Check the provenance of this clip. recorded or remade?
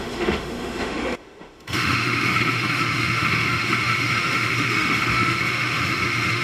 remade